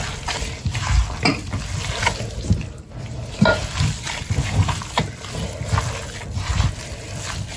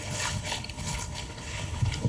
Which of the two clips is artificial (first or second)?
second